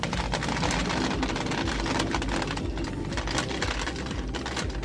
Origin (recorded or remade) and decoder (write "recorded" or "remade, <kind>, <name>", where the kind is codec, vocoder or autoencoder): recorded